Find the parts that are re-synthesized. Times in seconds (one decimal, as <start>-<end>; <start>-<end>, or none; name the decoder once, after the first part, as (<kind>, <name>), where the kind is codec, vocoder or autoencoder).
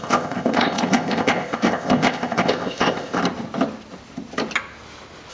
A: 0.0-3.2 (codec, ZipCodec)